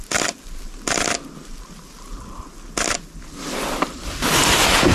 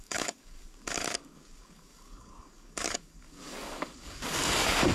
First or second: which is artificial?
second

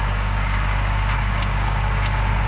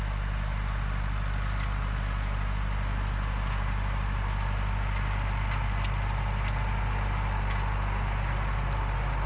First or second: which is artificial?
first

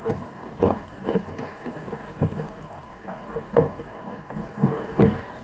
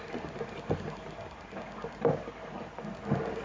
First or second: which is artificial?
first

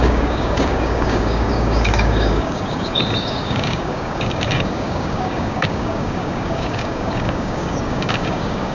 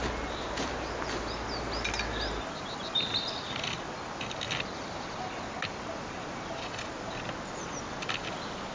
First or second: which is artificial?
first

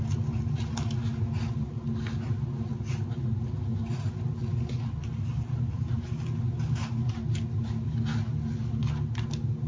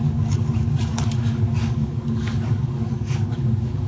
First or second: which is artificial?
second